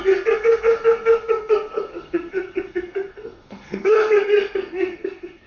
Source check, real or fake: fake